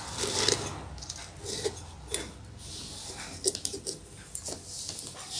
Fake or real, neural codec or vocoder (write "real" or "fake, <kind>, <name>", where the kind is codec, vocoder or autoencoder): real